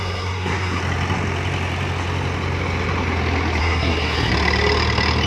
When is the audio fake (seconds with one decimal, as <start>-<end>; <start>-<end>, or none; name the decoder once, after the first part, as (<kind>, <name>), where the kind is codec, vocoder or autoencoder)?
0.0-0.8 (codec, SNAC); 3.6-4.3